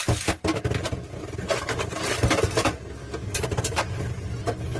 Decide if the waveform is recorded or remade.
recorded